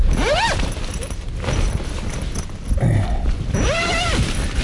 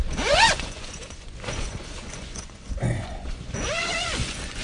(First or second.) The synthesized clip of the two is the second